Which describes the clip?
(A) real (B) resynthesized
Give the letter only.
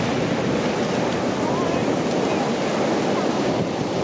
A